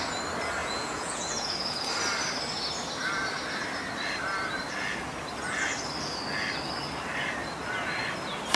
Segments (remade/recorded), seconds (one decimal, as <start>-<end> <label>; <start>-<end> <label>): 0.0-0.6 recorded; 0.6-1.9 remade; 1.9-8.6 recorded